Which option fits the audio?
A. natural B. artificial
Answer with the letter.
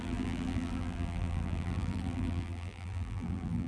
B